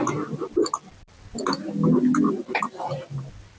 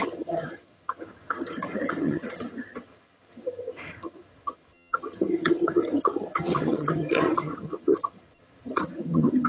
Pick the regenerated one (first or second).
second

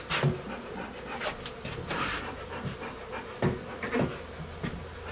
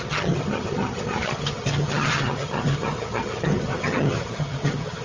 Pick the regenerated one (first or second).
second